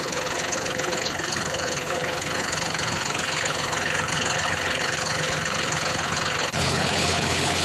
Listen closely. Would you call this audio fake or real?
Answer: fake